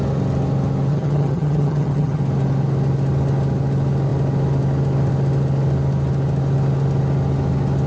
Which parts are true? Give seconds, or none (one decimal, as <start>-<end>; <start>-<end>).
0.0-0.9; 2.2-7.9